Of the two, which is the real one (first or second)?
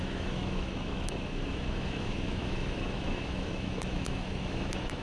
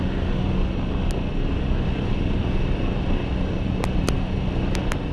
second